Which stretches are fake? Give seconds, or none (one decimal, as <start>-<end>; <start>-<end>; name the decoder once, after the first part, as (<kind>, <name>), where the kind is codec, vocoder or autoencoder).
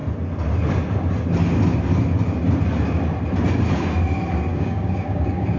4.5-5.6 (codec, DAC)